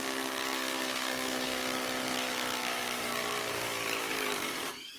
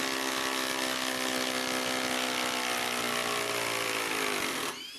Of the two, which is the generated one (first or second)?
first